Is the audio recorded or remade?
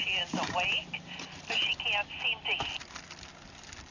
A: recorded